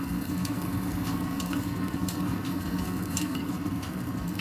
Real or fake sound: fake